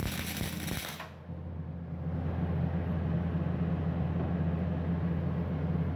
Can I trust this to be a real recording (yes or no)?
yes